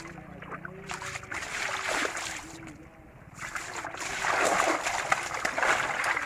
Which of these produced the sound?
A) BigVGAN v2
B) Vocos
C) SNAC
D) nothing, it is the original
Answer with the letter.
D